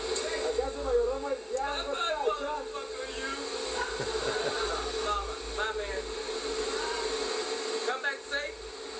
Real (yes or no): yes